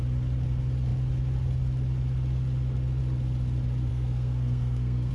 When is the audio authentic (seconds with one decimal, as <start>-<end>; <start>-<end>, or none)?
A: 0.0-3.9